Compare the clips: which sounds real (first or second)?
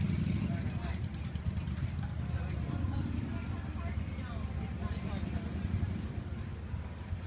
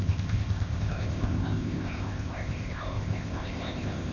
first